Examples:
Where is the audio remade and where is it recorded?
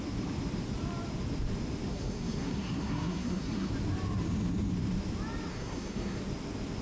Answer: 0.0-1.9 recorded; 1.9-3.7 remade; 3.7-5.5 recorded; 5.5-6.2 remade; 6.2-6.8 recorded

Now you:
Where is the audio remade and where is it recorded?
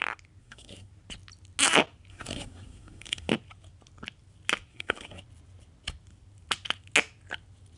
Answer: 0.0-0.4 recorded; 0.4-0.9 remade; 0.9-2.1 recorded; 2.1-3.3 remade; 3.3-4.7 recorded; 4.7-5.2 remade; 5.2-7.8 recorded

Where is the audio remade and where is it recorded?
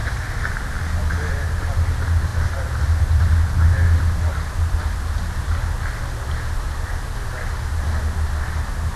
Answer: 0.0-9.0 recorded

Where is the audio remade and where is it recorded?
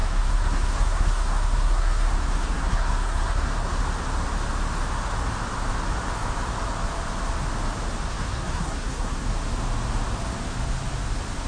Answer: 0.0-3.8 remade; 3.8-8.1 recorded; 8.1-9.3 remade; 9.3-11.5 recorded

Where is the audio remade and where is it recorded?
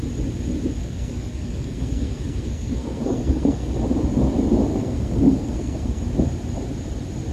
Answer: 0.0-0.8 recorded; 0.8-3.8 remade; 3.8-4.7 recorded; 4.7-6.0 remade; 6.0-7.3 recorded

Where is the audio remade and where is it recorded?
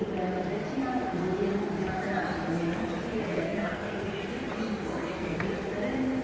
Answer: 0.0-3.2 recorded; 3.2-4.1 remade; 4.1-4.9 recorded; 4.9-5.7 remade; 5.7-6.2 recorded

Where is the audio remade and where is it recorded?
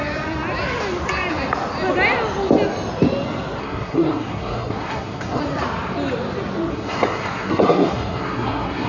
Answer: 0.0-3.6 recorded; 3.6-5.4 remade; 5.4-6.7 recorded; 6.7-8.9 remade